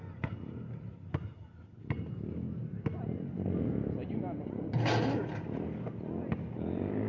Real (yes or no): yes